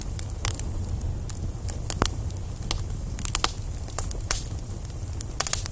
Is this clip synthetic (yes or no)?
no